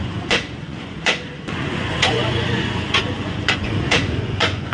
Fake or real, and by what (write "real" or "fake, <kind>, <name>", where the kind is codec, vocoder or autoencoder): fake, vocoder, Vocos